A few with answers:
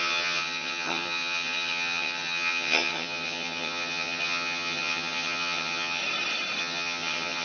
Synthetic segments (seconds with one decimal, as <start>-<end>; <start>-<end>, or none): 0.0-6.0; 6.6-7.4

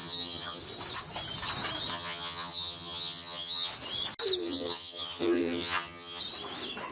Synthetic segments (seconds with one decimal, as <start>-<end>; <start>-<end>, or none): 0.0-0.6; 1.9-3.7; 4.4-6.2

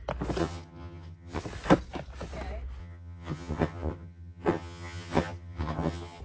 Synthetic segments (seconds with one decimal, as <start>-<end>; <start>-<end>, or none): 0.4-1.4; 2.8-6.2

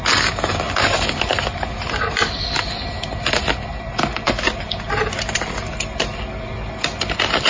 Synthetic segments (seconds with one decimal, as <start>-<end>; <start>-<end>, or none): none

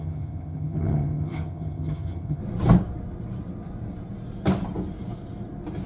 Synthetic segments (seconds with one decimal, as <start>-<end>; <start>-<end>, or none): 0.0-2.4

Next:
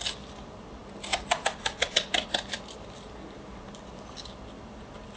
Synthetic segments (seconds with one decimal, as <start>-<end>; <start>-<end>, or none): none

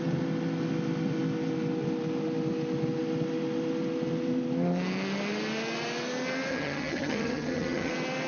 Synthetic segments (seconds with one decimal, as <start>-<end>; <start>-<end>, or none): 6.5-7.9